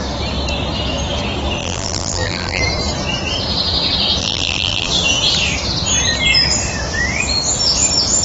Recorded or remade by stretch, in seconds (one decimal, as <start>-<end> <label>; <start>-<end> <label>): 0.0-1.6 recorded; 1.6-2.6 remade; 2.6-4.2 recorded; 4.2-4.9 remade; 4.9-8.2 recorded